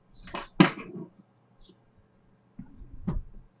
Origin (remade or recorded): recorded